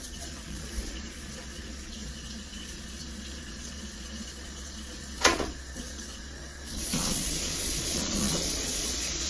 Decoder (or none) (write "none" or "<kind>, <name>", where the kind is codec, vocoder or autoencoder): vocoder, Vocos